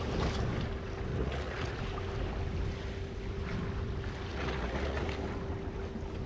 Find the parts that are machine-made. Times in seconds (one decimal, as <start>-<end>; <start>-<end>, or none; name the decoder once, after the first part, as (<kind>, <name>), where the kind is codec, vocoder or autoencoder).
1.1-1.8 (vocoder, Vocos); 4.3-5.0